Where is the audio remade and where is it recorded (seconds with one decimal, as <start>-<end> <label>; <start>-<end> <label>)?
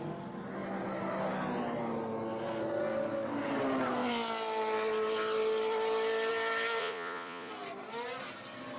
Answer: 0.0-6.8 recorded; 6.8-7.5 remade; 7.5-8.8 recorded